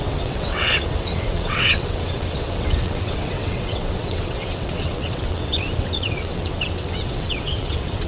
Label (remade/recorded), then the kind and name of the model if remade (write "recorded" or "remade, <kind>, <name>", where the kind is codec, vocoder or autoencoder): remade, vocoder, WaveNeXt